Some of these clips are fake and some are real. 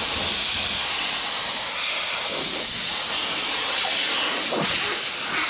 real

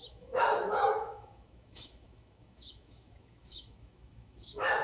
fake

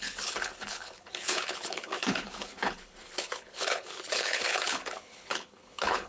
fake